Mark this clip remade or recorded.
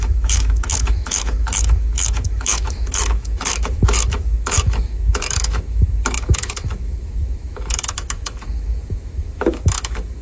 remade